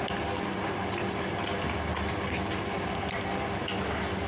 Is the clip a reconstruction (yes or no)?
no